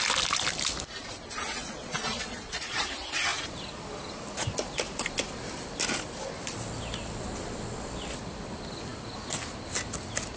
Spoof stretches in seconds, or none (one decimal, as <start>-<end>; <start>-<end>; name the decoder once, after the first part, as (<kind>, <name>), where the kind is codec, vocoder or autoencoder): 1.6-2.8 (vocoder, Vocos)